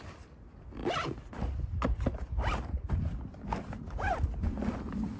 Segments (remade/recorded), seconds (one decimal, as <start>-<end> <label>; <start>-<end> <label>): 0.0-5.2 recorded